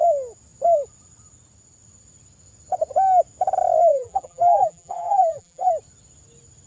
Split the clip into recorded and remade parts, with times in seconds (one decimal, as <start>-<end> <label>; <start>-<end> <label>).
0.0-3.9 recorded; 3.9-5.7 remade; 5.7-6.7 recorded